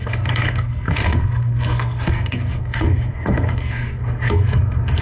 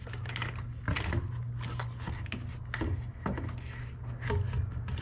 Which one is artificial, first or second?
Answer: first